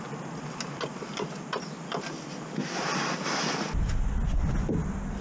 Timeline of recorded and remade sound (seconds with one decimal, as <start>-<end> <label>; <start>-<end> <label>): 0.0-5.2 recorded